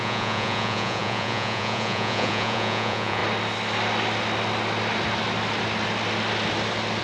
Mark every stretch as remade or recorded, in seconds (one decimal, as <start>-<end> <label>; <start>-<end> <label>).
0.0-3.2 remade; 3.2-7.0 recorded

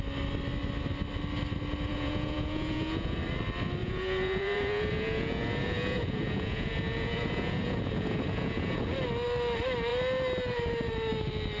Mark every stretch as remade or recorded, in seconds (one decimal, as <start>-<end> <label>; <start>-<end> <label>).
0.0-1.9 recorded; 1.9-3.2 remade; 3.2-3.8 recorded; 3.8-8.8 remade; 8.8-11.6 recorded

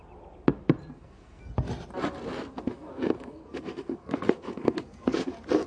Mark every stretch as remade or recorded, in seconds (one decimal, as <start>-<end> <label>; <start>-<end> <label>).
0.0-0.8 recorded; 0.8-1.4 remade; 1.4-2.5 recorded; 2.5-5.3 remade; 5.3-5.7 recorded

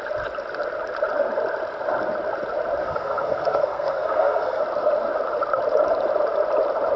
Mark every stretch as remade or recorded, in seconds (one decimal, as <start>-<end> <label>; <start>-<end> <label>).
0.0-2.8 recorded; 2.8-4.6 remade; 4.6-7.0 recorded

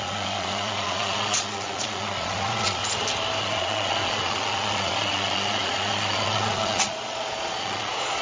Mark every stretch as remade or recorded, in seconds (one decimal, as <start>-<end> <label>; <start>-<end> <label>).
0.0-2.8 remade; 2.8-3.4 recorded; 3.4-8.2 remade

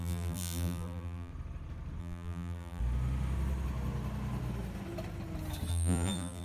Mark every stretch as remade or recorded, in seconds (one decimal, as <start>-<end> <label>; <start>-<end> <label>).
0.0-1.3 remade; 1.3-2.0 recorded; 2.0-2.8 remade; 2.8-5.7 recorded; 5.7-6.4 remade